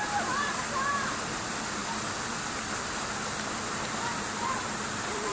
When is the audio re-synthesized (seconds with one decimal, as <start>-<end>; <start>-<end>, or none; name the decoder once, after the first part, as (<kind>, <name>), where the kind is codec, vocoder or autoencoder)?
none